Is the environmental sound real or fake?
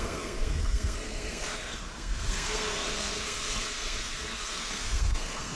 fake